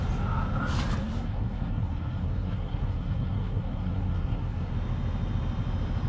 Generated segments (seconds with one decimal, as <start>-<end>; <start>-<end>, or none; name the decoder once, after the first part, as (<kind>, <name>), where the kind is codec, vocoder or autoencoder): 1.0-4.7 (codec, SNAC)